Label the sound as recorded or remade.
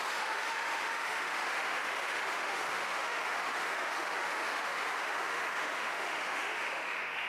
remade